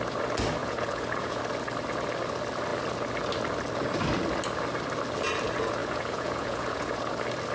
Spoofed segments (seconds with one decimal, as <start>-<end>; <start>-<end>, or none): 0.6-1.4; 5.8-7.1